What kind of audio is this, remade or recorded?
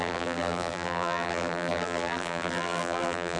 remade